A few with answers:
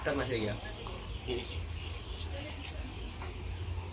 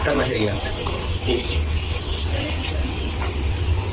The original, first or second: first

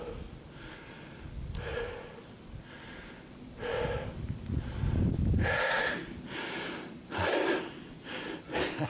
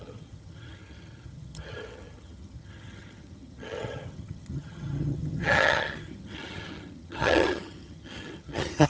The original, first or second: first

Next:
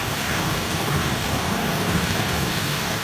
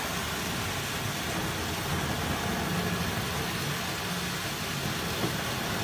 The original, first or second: second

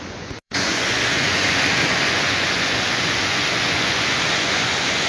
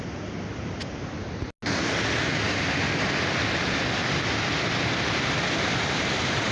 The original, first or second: second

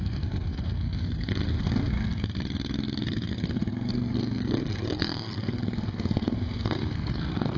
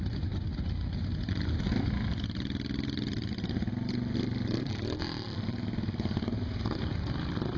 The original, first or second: second